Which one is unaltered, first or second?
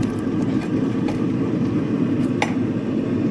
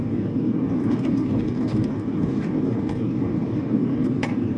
first